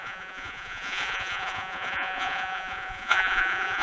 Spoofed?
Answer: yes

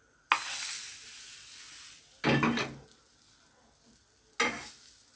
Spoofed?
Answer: no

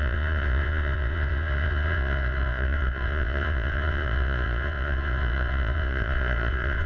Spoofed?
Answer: yes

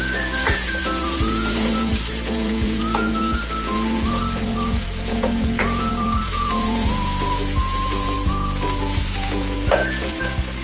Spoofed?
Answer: yes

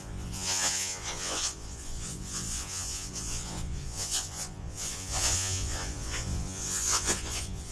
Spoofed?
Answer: yes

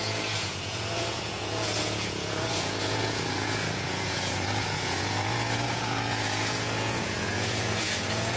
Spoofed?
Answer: yes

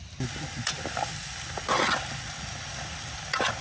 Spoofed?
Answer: no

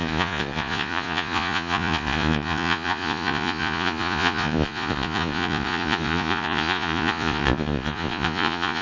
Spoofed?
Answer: yes